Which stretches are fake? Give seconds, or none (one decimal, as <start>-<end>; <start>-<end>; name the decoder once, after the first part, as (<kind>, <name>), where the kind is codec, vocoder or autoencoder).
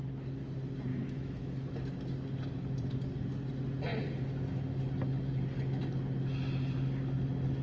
0.9-1.7 (autoencoder, DAC-VAE)